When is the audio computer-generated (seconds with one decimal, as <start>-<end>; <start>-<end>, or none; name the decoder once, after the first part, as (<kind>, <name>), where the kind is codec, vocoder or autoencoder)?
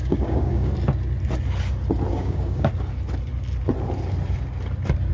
0.0-0.7 (codec, DAC); 2.1-2.7